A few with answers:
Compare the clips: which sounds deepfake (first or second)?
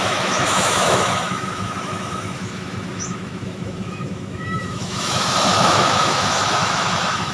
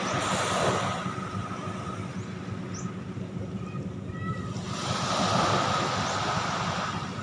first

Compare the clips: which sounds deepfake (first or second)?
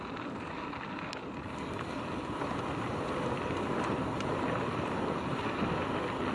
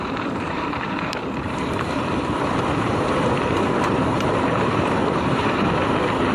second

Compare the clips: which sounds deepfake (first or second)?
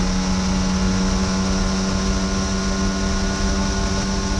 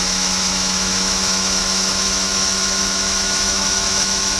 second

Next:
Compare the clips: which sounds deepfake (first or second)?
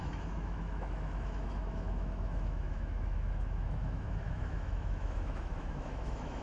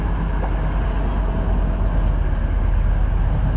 first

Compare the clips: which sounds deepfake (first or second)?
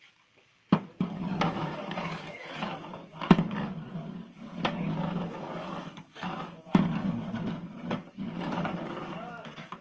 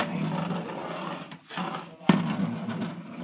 first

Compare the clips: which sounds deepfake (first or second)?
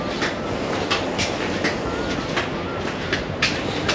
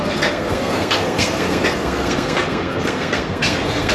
second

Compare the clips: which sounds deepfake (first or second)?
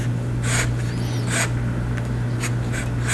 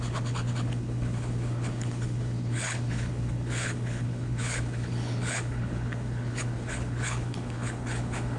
second